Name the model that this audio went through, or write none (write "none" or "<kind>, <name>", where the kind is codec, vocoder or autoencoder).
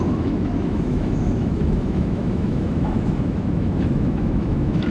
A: autoencoder, DAC-VAE